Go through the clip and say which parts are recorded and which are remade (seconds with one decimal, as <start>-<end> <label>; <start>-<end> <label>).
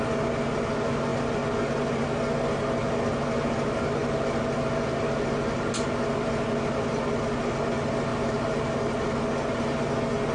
0.0-8.1 recorded; 8.1-8.7 remade; 8.7-10.3 recorded